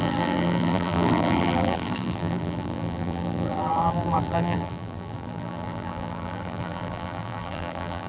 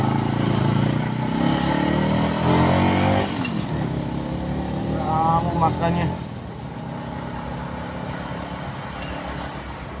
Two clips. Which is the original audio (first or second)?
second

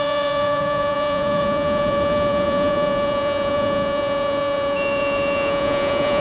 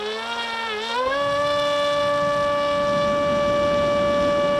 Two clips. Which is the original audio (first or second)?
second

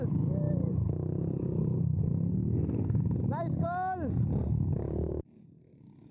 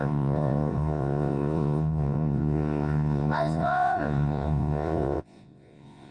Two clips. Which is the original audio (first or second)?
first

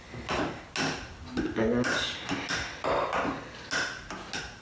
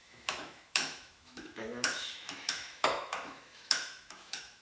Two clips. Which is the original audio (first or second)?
first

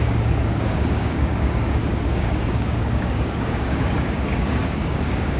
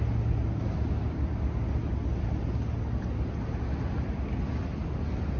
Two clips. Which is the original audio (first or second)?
second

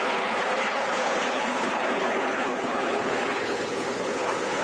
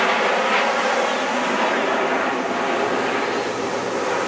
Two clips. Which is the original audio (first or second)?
second